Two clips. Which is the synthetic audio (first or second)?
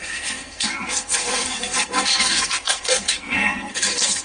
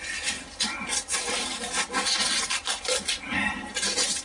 first